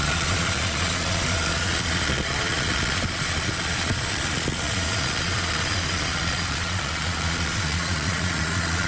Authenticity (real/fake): fake